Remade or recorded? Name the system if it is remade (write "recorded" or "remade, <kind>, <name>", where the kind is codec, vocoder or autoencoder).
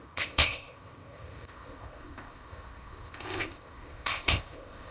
remade, codec, ZipCodec